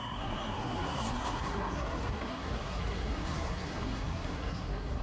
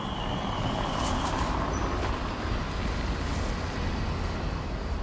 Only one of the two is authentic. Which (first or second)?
second